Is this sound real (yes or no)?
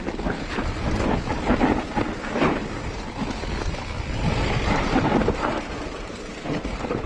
yes